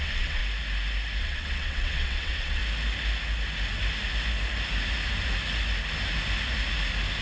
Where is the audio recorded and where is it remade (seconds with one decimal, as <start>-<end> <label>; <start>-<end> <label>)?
0.0-0.4 remade; 0.4-1.2 recorded; 1.2-2.6 remade; 2.6-7.2 recorded